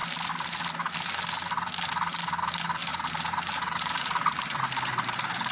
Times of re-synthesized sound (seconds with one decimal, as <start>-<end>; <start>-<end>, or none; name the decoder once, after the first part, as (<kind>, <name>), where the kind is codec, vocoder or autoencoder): 2.9-4.6 (vocoder, BigVGAN v2)